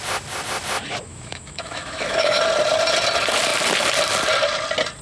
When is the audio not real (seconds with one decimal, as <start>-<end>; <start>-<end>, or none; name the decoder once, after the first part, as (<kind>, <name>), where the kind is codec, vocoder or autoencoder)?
1.1-2.4 (autoencoder, DAC-VAE)